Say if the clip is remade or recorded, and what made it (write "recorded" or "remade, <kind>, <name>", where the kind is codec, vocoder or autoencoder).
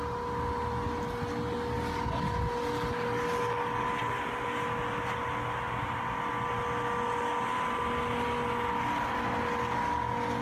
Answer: recorded